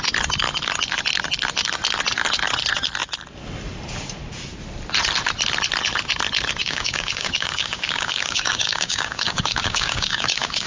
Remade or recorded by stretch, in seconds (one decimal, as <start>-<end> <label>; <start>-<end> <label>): 0.0-6.6 recorded; 6.6-10.7 remade